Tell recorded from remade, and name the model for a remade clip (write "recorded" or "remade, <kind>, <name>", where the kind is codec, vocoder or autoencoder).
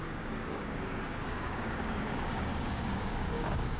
remade, codec, DAC